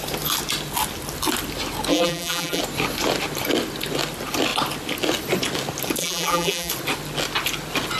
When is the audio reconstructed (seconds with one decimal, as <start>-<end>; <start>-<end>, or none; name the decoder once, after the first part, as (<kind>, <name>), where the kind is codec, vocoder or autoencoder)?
1.9-2.6 (vocoder, BigVGAN v2); 6.0-6.7